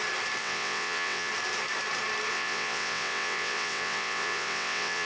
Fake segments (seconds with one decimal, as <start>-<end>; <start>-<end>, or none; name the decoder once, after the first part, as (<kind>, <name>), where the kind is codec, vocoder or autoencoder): 0.4-1.3 (vocoder, WaveNeXt); 2.3-5.1